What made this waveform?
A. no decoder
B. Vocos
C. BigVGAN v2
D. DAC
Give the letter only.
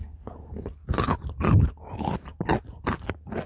A